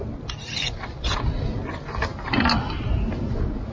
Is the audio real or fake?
real